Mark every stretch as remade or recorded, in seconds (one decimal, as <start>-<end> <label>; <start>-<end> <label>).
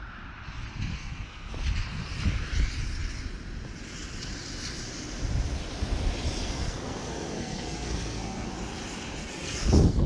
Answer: 0.0-0.9 recorded; 0.9-1.5 remade; 1.5-6.4 recorded; 6.4-8.5 remade; 8.5-9.2 recorded; 9.2-10.1 remade